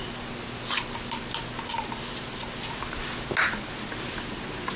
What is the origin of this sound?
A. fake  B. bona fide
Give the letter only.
B